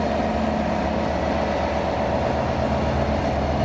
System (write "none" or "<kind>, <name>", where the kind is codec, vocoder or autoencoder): none